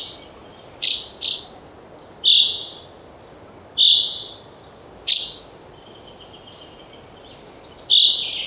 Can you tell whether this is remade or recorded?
recorded